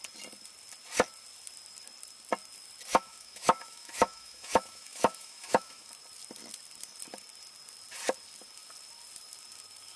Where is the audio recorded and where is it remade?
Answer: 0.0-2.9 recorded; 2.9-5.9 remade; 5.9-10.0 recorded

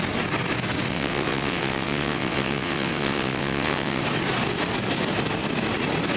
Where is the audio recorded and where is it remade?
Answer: 0.0-0.9 recorded; 0.9-4.0 remade; 4.0-6.2 recorded

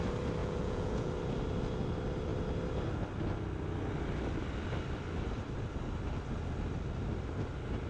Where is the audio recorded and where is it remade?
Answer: 0.0-0.4 recorded; 0.4-1.1 remade; 1.1-7.9 recorded

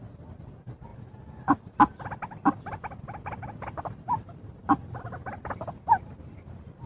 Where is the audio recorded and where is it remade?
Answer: 0.0-6.9 recorded

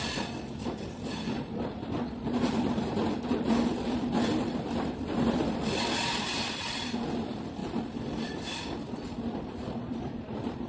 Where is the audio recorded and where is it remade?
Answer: 0.0-10.7 remade

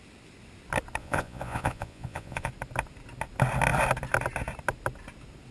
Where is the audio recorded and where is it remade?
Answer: 0.0-1.0 recorded; 1.0-2.5 remade; 2.5-5.5 recorded

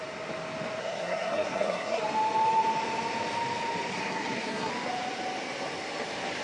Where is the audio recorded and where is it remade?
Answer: 0.0-0.8 recorded; 0.8-2.0 remade; 2.0-3.9 recorded; 3.9-4.7 remade; 4.7-6.4 recorded

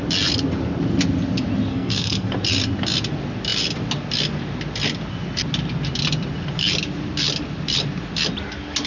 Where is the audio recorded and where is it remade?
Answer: 0.0-1.7 recorded; 1.7-2.3 remade; 2.3-8.9 recorded